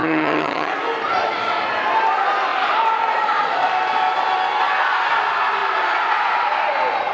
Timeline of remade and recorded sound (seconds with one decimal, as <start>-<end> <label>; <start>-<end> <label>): 0.0-0.7 remade; 0.7-7.1 recorded

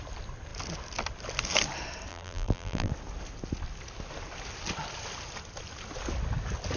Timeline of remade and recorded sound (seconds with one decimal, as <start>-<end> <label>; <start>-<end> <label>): 0.0-2.1 recorded; 2.1-2.9 remade; 2.9-6.8 recorded

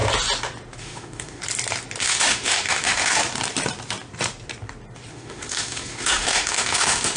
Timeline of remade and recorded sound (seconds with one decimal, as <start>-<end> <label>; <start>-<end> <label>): 0.0-0.8 recorded; 0.8-1.4 remade; 1.4-2.0 recorded; 2.0-3.2 remade; 3.2-5.1 recorded; 5.1-7.2 remade

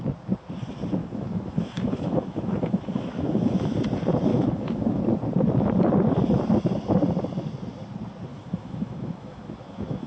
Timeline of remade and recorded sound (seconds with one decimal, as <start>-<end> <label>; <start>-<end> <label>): 0.0-1.0 recorded; 1.0-3.8 remade; 3.8-4.3 recorded; 4.3-5.0 remade; 5.0-8.3 recorded; 8.3-10.1 remade